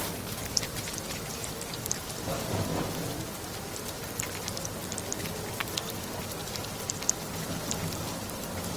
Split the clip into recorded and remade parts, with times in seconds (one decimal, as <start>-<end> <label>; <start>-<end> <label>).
0.0-2.7 remade; 2.7-6.2 recorded; 6.2-8.8 remade